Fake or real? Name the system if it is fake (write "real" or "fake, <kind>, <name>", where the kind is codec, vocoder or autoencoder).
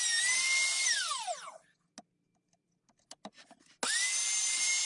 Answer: real